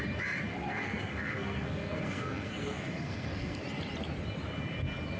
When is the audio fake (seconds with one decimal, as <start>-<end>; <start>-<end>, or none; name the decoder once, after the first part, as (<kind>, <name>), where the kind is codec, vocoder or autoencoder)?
0.5-3.6 (codec, SNAC)